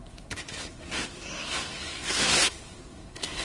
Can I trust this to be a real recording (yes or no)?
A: no